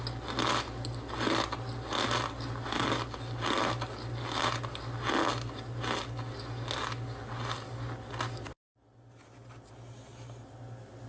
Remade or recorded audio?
recorded